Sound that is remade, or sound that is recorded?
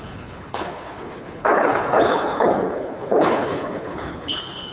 remade